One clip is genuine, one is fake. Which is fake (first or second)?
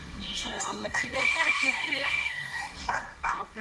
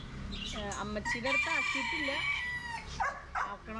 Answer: first